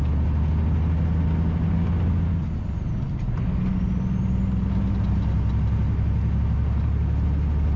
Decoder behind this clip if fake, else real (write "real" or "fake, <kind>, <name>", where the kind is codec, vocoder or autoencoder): real